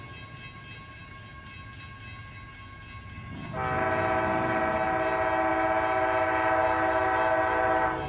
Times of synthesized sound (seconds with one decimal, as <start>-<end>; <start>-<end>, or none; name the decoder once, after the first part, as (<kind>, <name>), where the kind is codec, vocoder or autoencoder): none